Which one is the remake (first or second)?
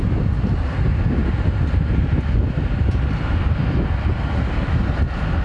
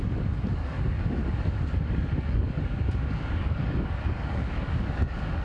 second